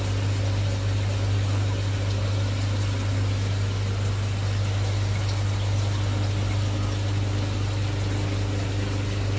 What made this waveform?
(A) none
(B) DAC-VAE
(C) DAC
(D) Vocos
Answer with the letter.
A